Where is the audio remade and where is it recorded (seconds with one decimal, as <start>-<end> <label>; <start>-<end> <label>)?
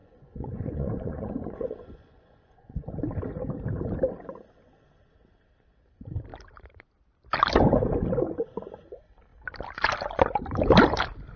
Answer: 0.0-3.0 remade; 3.0-11.4 recorded